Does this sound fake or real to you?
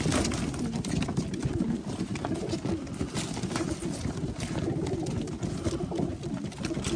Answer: real